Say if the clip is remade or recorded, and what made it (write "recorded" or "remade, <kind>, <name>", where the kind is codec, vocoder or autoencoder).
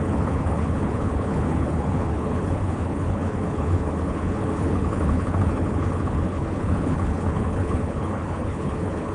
remade, codec, HILCodec